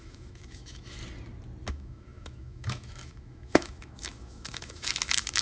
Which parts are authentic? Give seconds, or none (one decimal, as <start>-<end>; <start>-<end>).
1.0-1.7